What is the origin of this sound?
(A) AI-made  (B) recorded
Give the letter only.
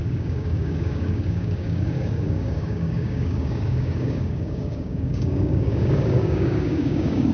A